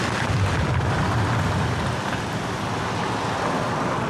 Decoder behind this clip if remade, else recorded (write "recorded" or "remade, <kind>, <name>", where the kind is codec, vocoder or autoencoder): recorded